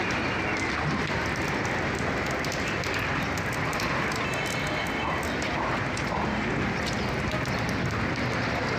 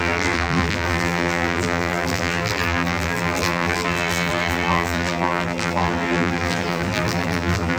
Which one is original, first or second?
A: first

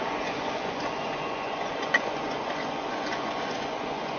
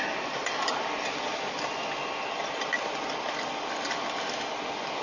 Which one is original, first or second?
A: second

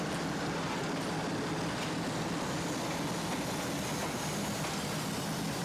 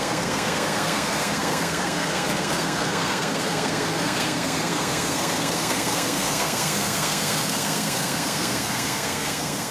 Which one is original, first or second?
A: first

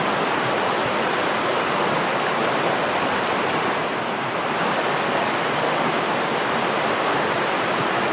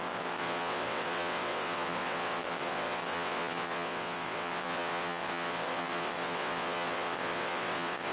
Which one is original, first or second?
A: first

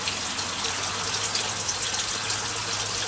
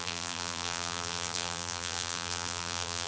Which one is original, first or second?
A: first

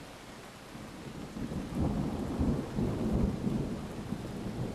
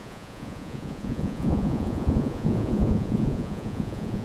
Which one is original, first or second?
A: first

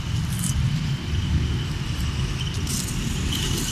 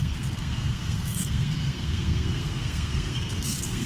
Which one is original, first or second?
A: first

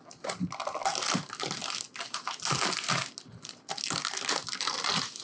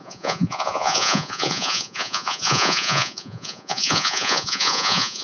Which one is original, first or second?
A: first